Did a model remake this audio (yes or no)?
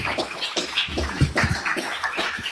yes